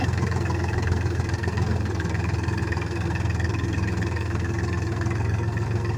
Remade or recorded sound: remade